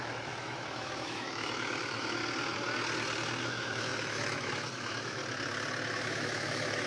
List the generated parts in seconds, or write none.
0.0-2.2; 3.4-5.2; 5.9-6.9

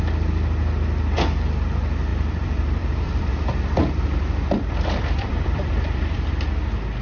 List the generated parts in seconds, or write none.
2.1-6.3

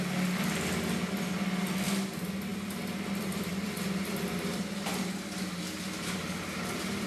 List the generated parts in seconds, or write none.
2.5-7.1